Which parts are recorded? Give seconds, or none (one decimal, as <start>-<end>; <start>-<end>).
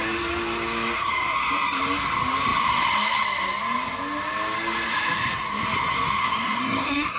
0.0-6.2